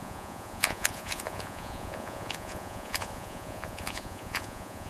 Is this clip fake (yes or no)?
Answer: yes